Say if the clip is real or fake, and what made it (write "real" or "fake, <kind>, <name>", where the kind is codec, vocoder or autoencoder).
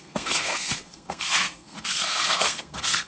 fake, codec, SNAC